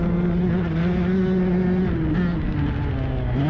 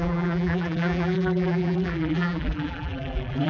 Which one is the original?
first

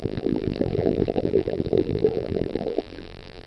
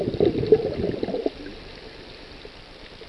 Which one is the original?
second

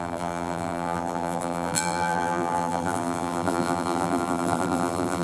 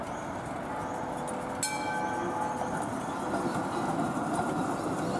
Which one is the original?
second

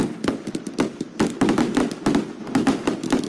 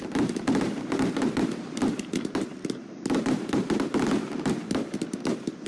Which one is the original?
first